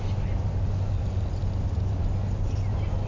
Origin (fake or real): real